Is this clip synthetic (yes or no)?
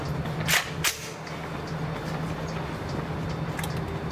no